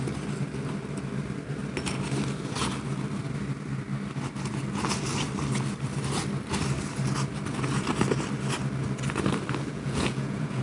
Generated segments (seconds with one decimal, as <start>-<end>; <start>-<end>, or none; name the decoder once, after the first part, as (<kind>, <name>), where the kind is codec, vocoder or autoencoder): 9.7-10.6 (vocoder, Vocos)